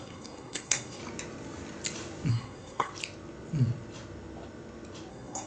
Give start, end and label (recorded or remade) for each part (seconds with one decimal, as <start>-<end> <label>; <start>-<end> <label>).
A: 0.0-1.0 remade; 1.0-2.3 recorded; 2.3-2.9 remade; 2.9-5.1 recorded; 5.1-5.5 remade